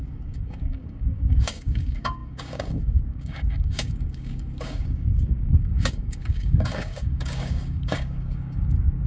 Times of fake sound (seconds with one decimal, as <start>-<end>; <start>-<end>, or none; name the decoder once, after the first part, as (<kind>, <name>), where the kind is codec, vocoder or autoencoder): 0.0-9.1 (codec, DAC)